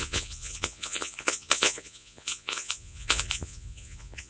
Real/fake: fake